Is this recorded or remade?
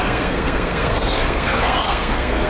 remade